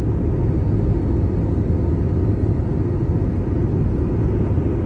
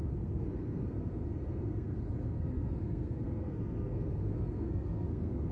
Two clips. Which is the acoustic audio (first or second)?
first